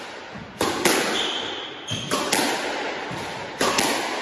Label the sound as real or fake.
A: real